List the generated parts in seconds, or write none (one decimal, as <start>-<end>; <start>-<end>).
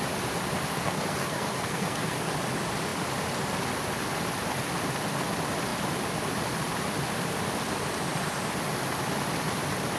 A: 0.7-2.3